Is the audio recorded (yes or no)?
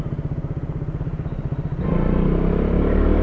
no